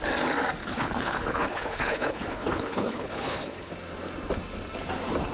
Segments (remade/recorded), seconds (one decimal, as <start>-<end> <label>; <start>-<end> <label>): 0.0-0.6 recorded; 0.6-3.7 remade; 3.7-5.3 recorded